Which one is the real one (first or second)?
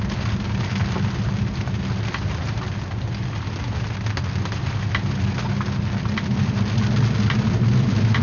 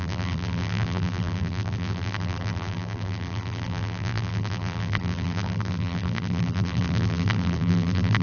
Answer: first